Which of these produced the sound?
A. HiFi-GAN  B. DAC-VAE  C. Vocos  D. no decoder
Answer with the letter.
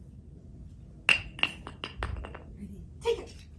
D